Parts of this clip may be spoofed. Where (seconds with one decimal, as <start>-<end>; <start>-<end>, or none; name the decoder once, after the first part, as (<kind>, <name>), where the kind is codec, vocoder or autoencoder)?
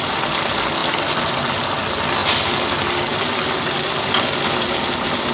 none